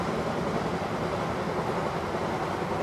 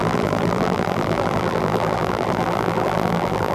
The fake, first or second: second